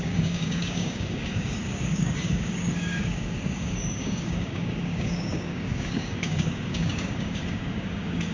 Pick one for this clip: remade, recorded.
remade